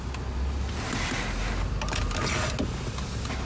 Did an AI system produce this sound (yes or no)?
no